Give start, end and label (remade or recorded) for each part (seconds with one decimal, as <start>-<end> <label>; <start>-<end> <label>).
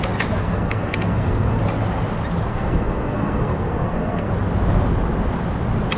0.0-0.4 recorded; 0.4-1.6 remade; 1.6-2.5 recorded; 2.5-4.3 remade; 4.3-6.0 recorded